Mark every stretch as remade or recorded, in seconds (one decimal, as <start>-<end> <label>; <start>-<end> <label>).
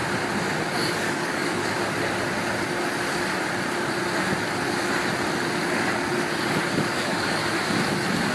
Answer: 0.0-1.1 recorded; 1.1-1.6 remade; 1.6-6.6 recorded; 6.6-7.4 remade; 7.4-8.3 recorded